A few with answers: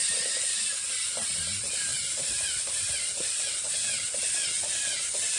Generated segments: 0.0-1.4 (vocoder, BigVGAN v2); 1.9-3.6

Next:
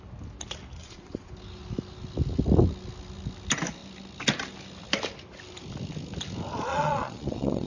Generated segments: 0.8-1.3 (vocoder, Vocos); 6.7-7.7

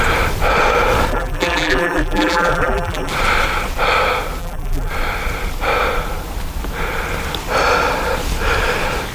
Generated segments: 1.1-3.1 (vocoder, BigVGAN v2); 4.4-4.9

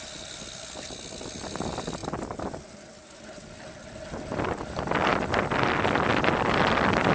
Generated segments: 2.0-4.4 (vocoder, BigVGAN v2)

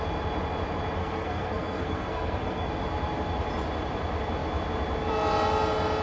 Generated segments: 1.0-2.7 (codec, SNAC)

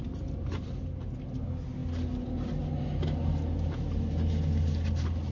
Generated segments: none

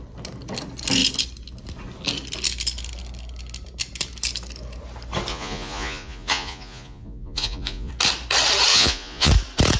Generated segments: 5.3-7.9 (vocoder, Vocos); 8.7-9.3